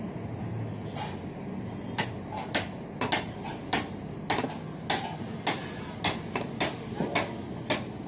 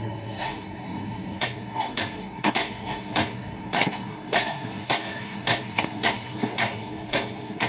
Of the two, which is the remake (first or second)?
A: second